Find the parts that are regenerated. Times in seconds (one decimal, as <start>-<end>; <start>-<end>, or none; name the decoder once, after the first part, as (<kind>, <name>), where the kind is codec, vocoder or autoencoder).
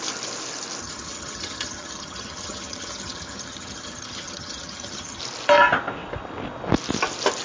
0.8-5.2 (vocoder, HiFi-GAN)